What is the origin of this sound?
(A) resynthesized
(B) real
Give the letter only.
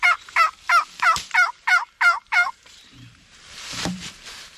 A